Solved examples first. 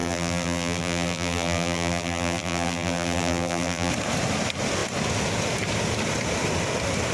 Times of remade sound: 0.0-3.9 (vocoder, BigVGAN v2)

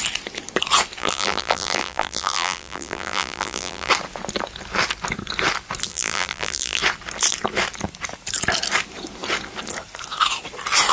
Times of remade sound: 1.0-3.9 (vocoder, BigVGAN v2); 5.9-6.8

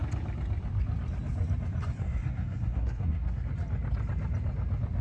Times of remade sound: 2.0-3.5 (codec, SNAC)

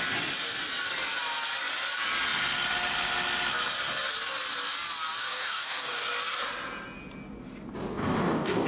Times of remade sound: 5.2-6.1 (codec, DAC); 8.0-8.7